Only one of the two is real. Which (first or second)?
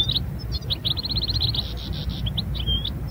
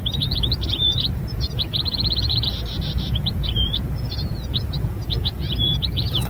first